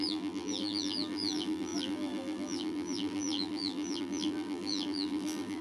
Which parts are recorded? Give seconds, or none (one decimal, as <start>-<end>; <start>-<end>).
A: none